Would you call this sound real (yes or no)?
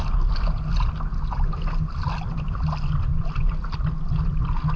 yes